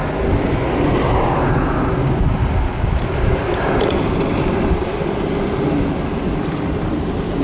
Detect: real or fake real